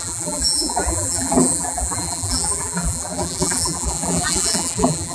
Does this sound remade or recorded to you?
remade